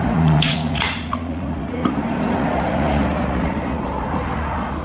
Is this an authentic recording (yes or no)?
no